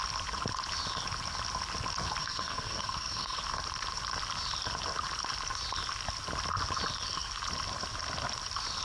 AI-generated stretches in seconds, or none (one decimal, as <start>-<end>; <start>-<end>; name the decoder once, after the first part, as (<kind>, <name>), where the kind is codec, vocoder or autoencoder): 2.2-3.4 (codec, SNAC)